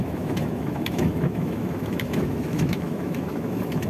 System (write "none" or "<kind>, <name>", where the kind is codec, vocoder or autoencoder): autoencoder, DAC-VAE